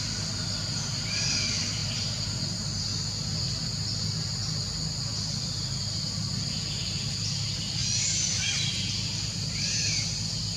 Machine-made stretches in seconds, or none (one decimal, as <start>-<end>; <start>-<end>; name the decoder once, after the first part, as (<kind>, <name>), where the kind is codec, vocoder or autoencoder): none